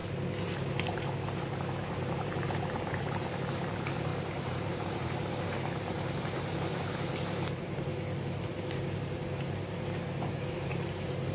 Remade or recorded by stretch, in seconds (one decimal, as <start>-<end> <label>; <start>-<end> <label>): 0.0-1.6 recorded; 1.6-7.9 remade; 7.9-10.3 recorded; 10.3-11.3 remade